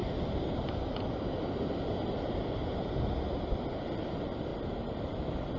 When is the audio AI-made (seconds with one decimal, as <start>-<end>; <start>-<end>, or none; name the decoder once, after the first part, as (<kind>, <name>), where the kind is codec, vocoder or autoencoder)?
1.9-2.6 (vocoder, BigVGAN v2); 3.7-5.6